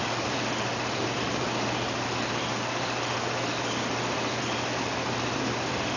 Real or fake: real